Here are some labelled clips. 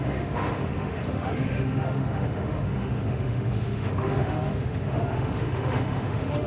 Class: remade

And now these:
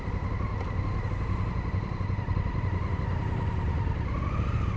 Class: recorded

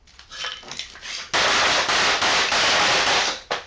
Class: recorded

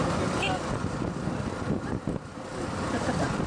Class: recorded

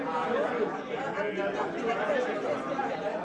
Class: recorded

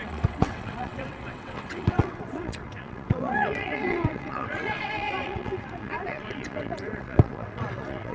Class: remade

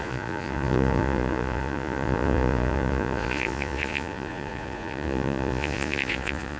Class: remade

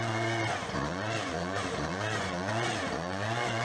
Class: remade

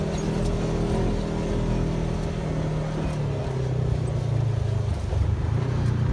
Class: recorded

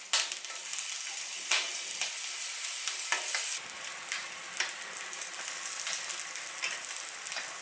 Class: recorded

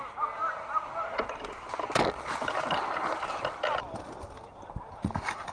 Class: recorded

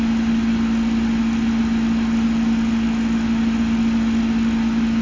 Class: recorded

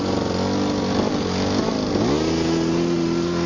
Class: recorded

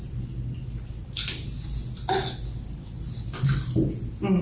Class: recorded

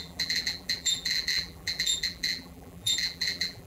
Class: remade